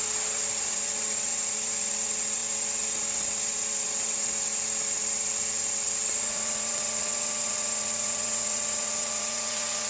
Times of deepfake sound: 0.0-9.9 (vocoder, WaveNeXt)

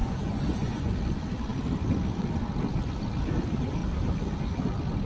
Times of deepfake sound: 0.0-0.9 (vocoder, Vocos)

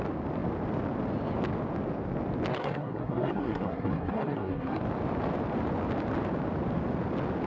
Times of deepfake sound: 2.5-4.8 (codec, SNAC)

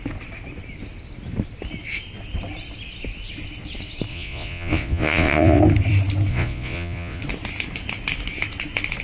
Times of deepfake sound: 4.1-5.6 (vocoder, Vocos); 6.3-7.2

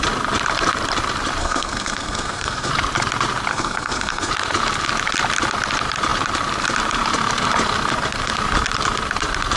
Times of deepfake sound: 1.4-2.7 (codec, SNAC); 3.5-4.3

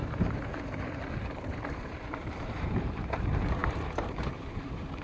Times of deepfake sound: 0.0-5.0 (vocoder, BigVGAN v2)